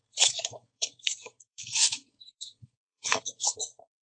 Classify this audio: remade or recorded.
remade